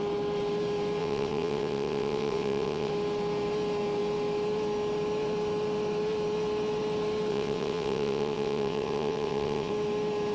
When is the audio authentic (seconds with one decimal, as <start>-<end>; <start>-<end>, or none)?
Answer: 0.0-1.0; 2.9-7.3; 9.7-10.3